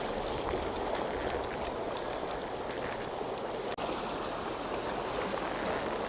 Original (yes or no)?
yes